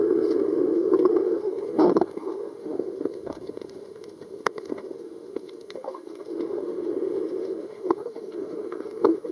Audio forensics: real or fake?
fake